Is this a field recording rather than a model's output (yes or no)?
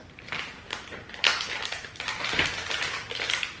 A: yes